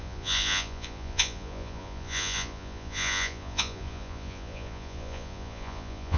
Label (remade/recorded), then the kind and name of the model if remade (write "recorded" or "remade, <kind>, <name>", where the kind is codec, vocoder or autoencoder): remade, vocoder, Vocos